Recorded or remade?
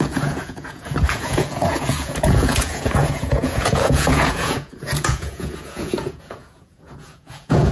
remade